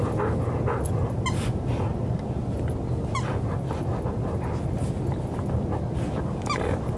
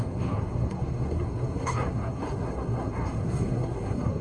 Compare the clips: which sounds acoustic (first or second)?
first